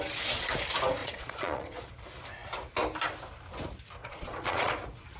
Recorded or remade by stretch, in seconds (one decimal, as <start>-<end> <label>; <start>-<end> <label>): 0.0-1.0 recorded; 1.0-2.0 remade; 2.0-4.0 recorded; 4.0-4.7 remade; 4.7-5.2 recorded